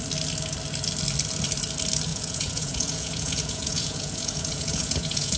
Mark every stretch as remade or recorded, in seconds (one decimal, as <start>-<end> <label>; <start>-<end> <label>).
0.0-2.1 recorded; 2.1-5.4 remade